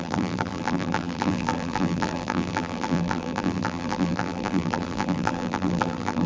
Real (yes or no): no